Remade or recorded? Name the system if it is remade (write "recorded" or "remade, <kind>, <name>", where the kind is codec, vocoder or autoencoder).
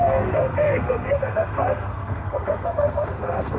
remade, codec, SNAC